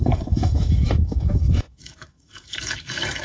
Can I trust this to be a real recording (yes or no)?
no